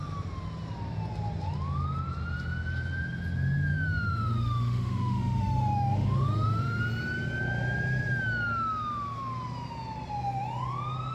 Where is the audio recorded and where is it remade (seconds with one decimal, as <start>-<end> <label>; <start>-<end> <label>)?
0.0-3.7 recorded; 3.7-6.8 remade; 6.8-11.1 recorded